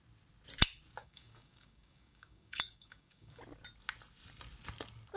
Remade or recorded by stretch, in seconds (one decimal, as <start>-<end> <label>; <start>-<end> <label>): 0.0-1.0 recorded; 1.0-3.4 remade; 3.4-5.2 recorded